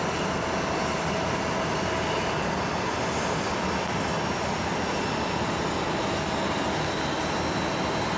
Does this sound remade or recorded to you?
recorded